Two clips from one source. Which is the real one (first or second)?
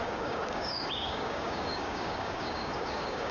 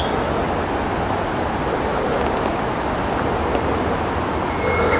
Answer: second